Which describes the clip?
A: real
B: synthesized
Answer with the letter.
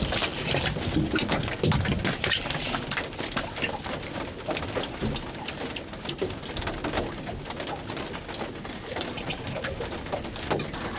A